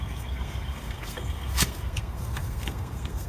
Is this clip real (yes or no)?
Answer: no